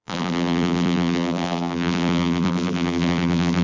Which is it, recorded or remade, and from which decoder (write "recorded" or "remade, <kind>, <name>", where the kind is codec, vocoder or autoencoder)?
remade, vocoder, BigVGAN v2